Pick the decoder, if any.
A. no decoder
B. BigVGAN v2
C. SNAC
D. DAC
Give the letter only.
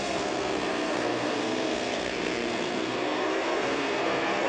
C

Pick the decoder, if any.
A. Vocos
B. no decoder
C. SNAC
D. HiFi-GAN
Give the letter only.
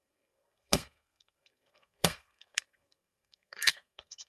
C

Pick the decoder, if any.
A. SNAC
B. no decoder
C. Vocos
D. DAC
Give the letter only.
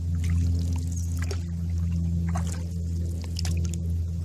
B